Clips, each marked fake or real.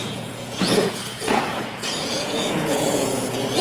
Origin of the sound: fake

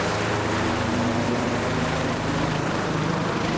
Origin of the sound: fake